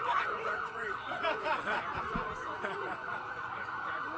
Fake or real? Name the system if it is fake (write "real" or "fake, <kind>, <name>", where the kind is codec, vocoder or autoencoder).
fake, vocoder, Vocos